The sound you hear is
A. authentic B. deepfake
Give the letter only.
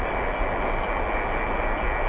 A